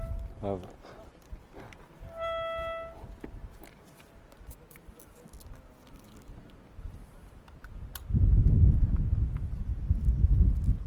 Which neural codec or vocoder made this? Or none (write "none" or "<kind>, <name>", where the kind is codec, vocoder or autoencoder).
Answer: none